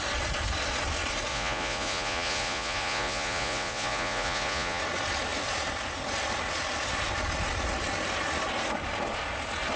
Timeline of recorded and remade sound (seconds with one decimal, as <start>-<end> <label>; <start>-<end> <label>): 0.0-1.3 recorded; 1.3-4.8 remade; 4.8-9.8 recorded